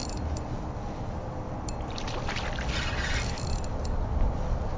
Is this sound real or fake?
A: real